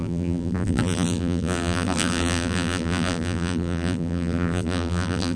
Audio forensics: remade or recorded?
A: remade